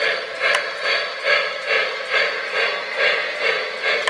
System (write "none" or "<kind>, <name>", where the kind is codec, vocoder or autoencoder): none